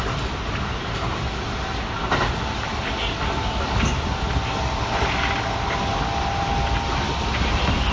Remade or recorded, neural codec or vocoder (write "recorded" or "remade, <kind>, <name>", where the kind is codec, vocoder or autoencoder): recorded